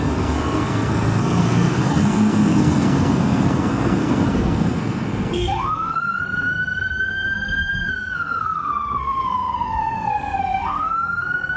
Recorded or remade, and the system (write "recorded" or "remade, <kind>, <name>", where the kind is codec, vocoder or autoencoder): remade, codec, SNAC